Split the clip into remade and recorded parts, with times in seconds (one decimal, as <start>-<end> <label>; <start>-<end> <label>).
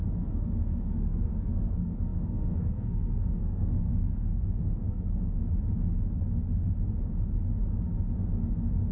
0.0-5.4 remade; 5.4-8.9 recorded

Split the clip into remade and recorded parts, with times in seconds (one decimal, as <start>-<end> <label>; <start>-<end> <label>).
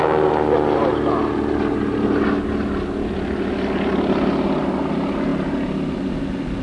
0.0-6.6 recorded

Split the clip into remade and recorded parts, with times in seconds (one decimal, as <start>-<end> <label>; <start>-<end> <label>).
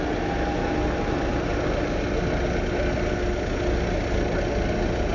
0.0-5.1 recorded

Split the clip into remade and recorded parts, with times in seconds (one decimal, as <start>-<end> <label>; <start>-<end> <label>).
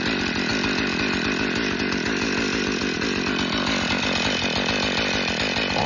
0.0-5.9 recorded